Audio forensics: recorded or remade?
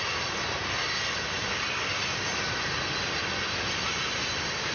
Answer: recorded